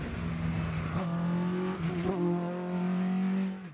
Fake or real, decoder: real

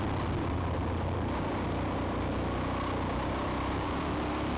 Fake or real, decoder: real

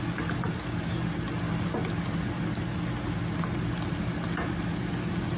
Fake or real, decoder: real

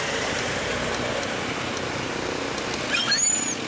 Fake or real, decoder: real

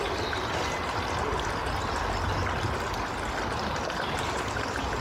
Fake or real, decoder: real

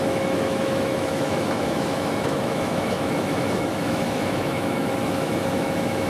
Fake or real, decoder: fake, autoencoder, DAC-VAE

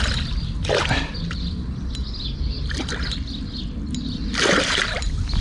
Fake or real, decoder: real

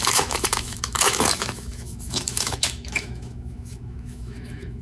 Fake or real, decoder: fake, autoencoder, DAC-VAE